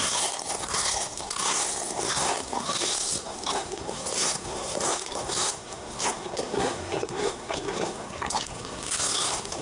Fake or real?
fake